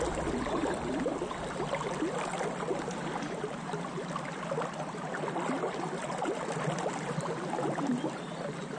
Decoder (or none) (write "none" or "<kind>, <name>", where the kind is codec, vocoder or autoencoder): none